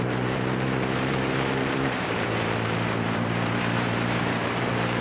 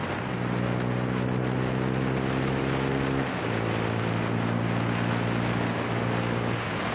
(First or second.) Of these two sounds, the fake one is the first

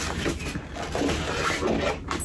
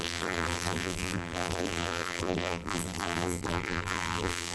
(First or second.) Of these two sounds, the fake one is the second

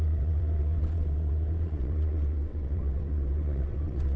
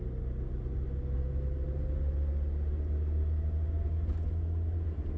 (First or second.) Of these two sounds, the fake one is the first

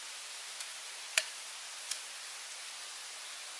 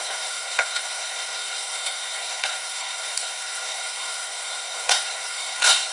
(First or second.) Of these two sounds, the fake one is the second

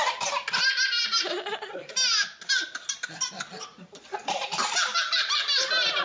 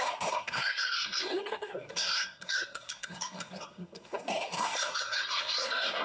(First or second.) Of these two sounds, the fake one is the second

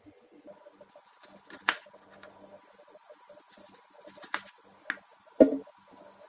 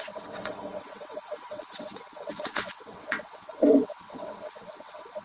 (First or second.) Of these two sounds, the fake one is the second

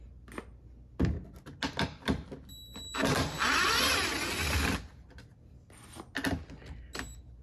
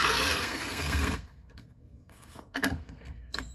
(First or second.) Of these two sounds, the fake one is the second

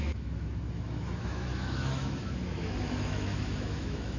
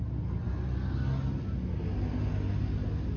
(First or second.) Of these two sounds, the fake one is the first